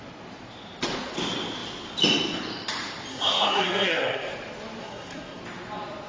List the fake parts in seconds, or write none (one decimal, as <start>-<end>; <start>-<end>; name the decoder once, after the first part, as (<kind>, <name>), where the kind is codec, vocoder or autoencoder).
3.1-4.3 (codec, SNAC); 4.8-5.4